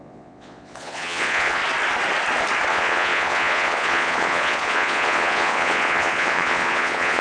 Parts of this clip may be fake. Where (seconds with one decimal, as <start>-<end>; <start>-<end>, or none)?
0.0-1.6; 2.7-7.2

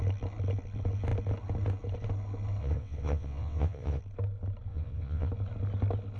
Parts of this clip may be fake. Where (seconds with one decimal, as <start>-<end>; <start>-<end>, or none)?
2.6-4.0; 4.7-5.3